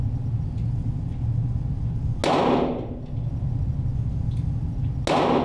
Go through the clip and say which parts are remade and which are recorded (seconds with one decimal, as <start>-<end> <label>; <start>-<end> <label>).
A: 0.0-5.4 recorded